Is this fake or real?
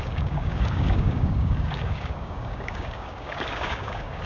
fake